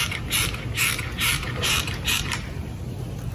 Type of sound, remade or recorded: remade